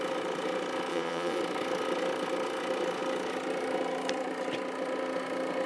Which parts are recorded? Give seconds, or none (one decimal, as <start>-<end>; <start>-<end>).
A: 0.0-0.9; 1.4-5.7